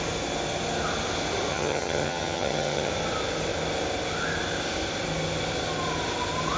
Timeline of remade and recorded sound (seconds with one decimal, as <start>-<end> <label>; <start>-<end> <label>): 0.0-1.5 recorded; 1.5-2.9 remade; 2.9-6.6 recorded